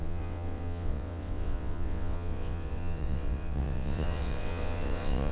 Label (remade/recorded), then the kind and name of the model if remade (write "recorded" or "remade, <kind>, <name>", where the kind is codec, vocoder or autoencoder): remade, vocoder, WaveNeXt